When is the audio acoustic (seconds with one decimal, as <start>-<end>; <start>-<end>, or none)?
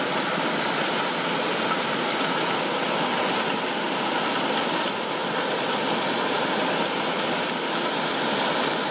0.0-8.9